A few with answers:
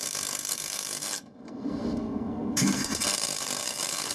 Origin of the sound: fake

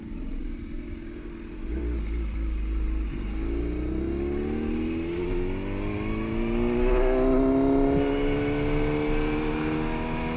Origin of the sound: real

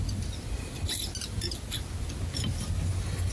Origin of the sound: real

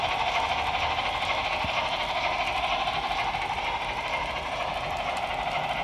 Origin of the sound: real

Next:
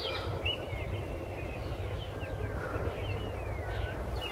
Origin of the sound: real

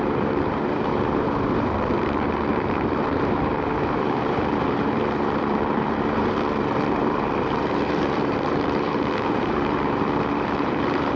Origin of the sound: fake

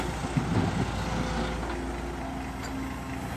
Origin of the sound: real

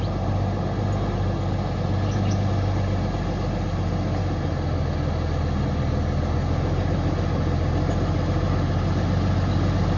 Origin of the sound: real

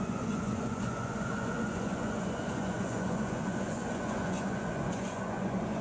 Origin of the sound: fake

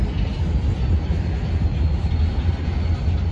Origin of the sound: real